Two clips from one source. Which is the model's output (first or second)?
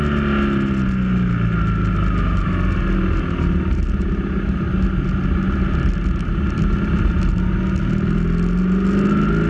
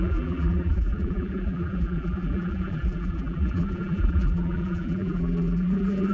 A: second